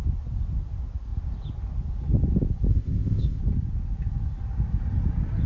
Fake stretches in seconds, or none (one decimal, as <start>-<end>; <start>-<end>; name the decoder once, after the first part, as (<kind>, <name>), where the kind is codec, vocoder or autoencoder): 2.7-3.4 (codec, ZipCodec)